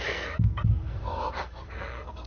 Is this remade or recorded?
remade